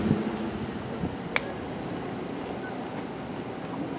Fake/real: real